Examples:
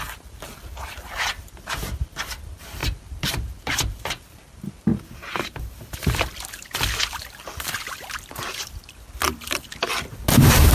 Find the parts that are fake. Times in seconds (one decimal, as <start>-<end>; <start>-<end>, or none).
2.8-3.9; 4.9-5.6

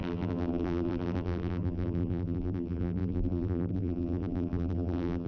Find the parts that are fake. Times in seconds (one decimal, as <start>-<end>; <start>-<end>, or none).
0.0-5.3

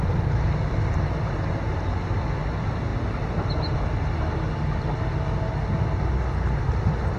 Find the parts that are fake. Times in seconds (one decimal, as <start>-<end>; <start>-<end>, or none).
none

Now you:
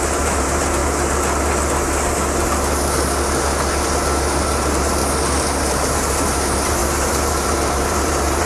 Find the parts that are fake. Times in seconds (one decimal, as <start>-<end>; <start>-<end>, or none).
0.0-0.8; 4.4-5.0; 5.6-8.4